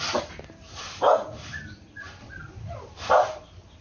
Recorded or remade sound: remade